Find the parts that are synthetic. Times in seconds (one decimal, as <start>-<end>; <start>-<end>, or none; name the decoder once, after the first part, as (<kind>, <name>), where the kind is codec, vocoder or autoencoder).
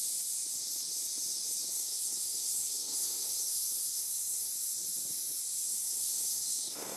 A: 1.7-4.5 (codec, SNAC); 5.7-7.0